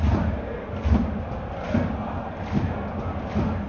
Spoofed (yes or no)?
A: no